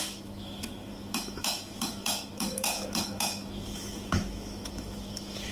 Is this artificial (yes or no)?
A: yes